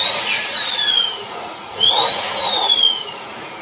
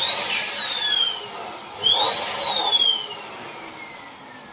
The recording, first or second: second